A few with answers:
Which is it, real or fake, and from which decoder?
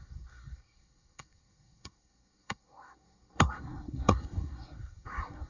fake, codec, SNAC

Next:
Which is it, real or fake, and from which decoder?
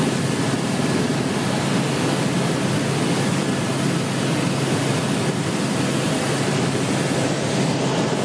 real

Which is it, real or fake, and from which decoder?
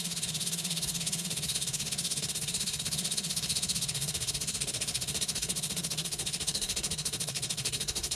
fake, codec, SNAC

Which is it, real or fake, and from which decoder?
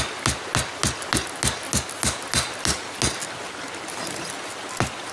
real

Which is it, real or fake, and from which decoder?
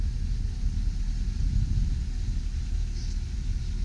real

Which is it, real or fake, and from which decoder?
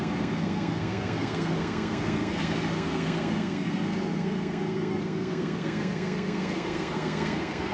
fake, codec, SNAC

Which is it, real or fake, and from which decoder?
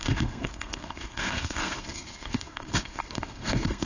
fake, codec, SNAC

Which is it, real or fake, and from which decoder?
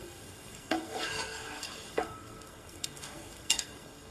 fake, codec, SNAC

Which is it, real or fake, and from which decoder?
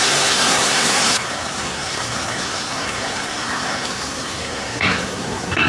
fake, codec, SNAC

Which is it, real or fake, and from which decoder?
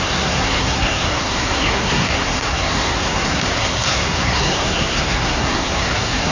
fake, codec, SNAC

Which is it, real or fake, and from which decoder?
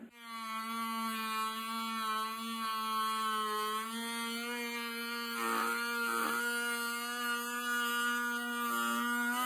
real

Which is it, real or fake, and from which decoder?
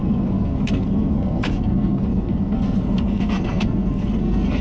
fake, codec, SNAC